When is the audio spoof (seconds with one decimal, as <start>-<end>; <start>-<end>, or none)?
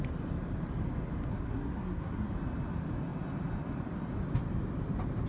1.3-2.3